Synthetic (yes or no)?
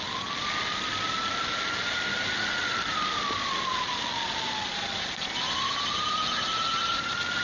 yes